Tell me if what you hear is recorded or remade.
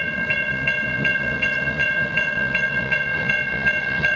remade